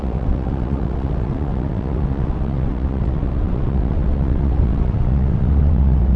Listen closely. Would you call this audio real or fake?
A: fake